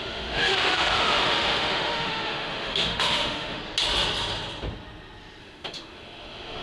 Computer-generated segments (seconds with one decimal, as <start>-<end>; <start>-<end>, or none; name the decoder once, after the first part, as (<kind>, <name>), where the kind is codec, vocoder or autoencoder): 0.0-3.6 (autoencoder, DAC-VAE); 5.4-6.6